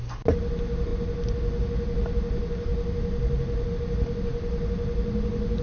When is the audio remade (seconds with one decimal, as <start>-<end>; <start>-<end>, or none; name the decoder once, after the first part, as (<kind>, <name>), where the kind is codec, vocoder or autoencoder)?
none